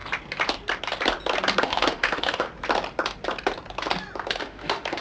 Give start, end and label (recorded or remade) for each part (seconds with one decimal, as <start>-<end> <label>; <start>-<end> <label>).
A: 0.0-1.6 recorded; 1.6-2.5 remade; 2.5-4.4 recorded; 4.4-5.0 remade

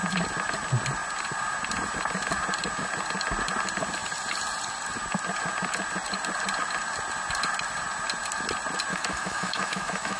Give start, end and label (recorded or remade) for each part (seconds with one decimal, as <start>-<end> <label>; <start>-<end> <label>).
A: 0.0-8.9 recorded; 8.9-10.2 remade

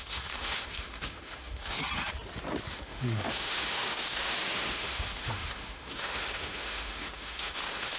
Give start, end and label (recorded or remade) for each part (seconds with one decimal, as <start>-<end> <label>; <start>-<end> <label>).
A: 0.0-1.8 remade; 1.8-2.7 recorded; 2.7-8.0 remade

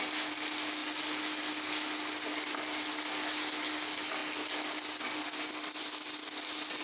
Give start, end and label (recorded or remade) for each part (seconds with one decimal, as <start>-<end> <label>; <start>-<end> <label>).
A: 0.0-6.8 recorded

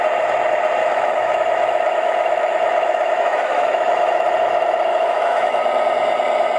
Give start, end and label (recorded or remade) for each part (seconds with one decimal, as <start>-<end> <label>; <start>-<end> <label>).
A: 0.0-0.8 recorded; 0.8-4.3 remade; 4.3-4.9 recorded; 4.9-5.6 remade; 5.6-6.6 recorded

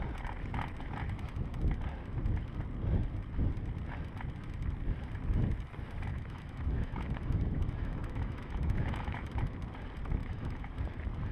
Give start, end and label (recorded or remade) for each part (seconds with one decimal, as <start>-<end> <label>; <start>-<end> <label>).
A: 0.0-6.1 recorded; 6.1-9.3 remade; 9.3-10.2 recorded; 10.2-10.7 remade; 10.7-11.3 recorded

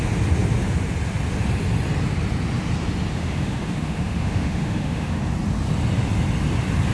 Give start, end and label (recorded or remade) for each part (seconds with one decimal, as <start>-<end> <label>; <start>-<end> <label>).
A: 0.0-3.1 recorded; 3.1-5.2 remade; 5.2-6.9 recorded

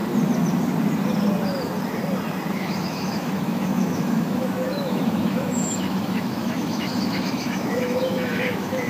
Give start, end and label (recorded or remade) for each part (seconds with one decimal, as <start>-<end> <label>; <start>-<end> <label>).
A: 0.0-2.5 recorded; 2.5-8.9 remade